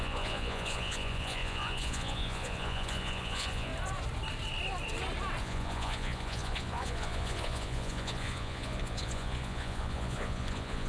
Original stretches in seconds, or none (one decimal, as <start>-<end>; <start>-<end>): 3.7-5.4